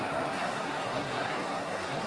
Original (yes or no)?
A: no